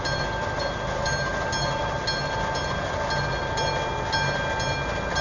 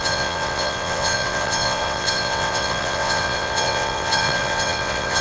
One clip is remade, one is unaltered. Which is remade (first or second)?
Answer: second